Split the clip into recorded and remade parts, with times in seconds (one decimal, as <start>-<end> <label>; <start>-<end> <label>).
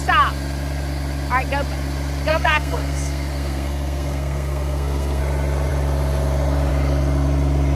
0.0-2.3 recorded; 2.3-5.2 remade; 5.2-7.8 recorded